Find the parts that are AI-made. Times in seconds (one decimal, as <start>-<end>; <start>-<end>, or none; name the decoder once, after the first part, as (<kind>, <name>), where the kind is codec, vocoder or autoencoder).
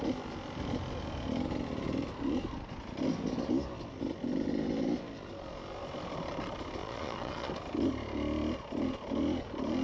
6.8-7.5 (vocoder, Vocos)